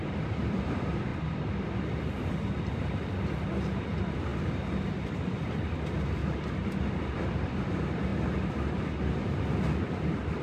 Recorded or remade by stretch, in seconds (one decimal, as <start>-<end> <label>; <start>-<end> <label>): 0.0-4.3 remade; 4.3-5.1 recorded; 5.1-6.2 remade; 6.2-7.0 recorded; 7.0-8.1 remade; 8.1-9.8 recorded; 9.8-10.4 remade